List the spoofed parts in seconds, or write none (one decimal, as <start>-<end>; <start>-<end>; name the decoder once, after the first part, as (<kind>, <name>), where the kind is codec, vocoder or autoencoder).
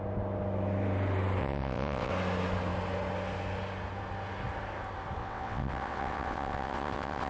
1.4-2.1 (vocoder, WaveNeXt); 5.2-7.3